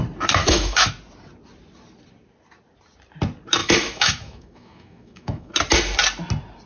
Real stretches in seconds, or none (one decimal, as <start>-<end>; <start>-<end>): 0.0-0.4; 0.9-3.6; 5.5-6.7